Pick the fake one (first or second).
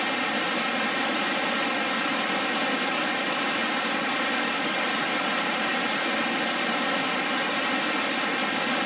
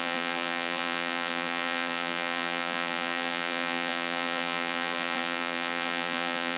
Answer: second